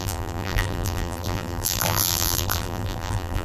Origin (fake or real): fake